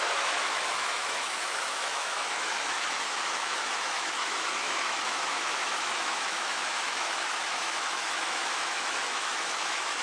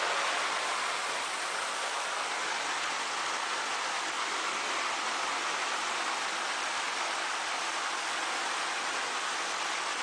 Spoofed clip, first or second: first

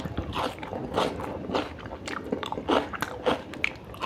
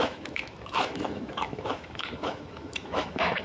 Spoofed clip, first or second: second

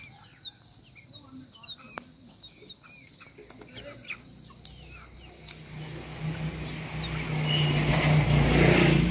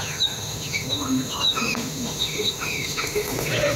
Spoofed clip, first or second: second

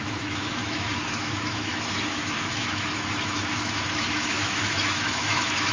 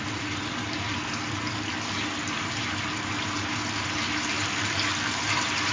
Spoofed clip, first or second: first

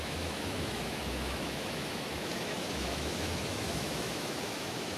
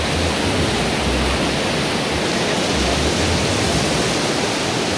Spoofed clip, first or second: first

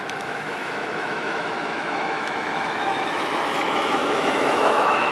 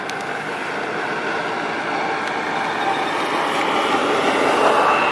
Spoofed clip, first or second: first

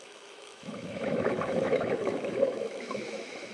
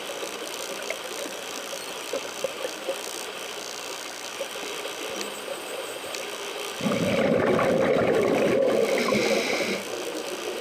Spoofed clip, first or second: first